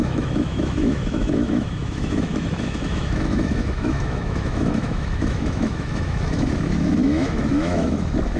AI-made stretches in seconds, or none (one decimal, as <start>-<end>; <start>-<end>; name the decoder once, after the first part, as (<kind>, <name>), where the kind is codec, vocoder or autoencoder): 0.0-8.4 (autoencoder, DAC-VAE)

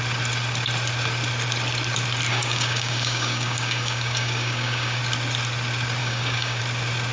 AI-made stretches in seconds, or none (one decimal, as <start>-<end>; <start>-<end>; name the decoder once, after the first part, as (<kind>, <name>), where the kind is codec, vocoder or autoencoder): 2.3-5.0 (codec, DAC); 6.0-6.6

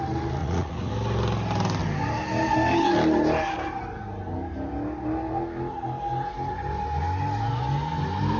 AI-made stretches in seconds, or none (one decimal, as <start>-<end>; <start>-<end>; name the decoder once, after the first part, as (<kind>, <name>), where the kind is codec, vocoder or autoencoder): 0.4-0.9 (vocoder, Vocos)

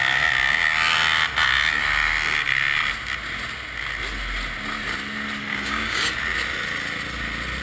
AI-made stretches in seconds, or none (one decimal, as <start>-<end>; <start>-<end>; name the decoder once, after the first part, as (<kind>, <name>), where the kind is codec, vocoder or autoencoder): 5.5-6.1 (codec, DAC)

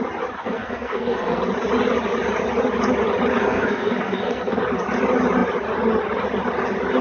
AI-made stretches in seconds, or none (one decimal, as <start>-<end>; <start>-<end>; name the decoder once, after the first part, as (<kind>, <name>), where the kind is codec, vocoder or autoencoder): 0.4-1.4 (codec, SNAC); 3.4-4.6

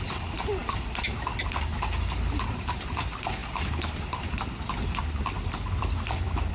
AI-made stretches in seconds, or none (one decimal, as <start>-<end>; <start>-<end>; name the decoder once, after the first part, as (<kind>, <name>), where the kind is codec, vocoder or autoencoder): none